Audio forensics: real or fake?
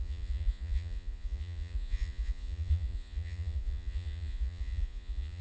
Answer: fake